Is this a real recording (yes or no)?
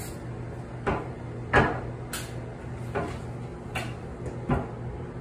yes